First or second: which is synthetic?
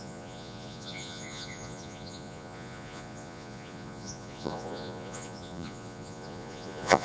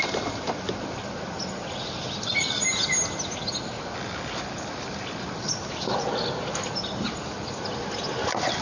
first